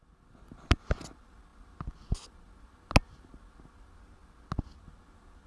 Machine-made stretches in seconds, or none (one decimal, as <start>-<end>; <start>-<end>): none